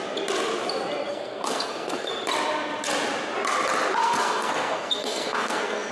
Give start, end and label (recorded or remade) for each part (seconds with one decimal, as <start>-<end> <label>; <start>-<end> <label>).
0.0-1.1 recorded; 1.1-2.1 remade; 2.1-4.0 recorded; 4.0-5.9 remade